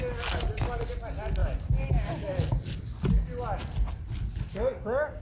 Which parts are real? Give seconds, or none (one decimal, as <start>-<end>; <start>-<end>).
0.0-5.2